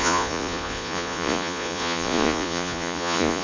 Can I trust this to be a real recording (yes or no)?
no